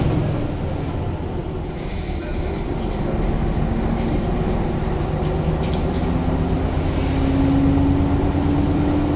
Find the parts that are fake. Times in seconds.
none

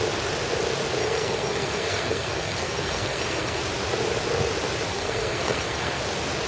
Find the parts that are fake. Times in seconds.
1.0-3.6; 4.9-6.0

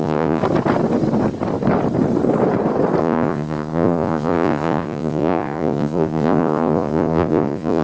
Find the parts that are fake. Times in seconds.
0.0-0.4; 3.0-7.8

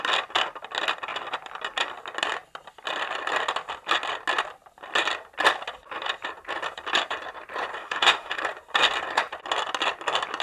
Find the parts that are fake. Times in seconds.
7.8-8.4

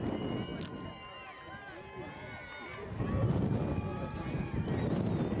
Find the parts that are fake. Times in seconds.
3.9-5.0

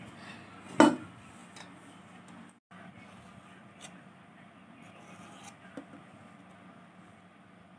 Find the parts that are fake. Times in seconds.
none

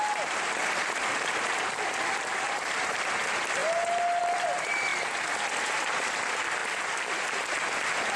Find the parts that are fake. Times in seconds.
0.0-3.6; 4.2-4.9; 5.7-6.6; 7.5-8.2

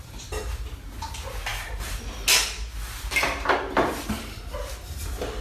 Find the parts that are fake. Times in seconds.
none